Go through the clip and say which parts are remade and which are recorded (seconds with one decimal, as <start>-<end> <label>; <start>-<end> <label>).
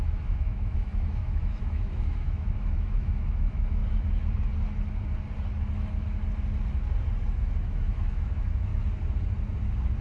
0.0-3.8 remade; 3.8-7.4 recorded; 7.4-8.7 remade; 8.7-10.0 recorded